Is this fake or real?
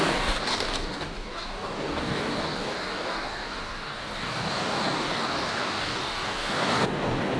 fake